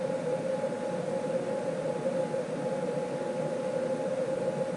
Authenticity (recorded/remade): recorded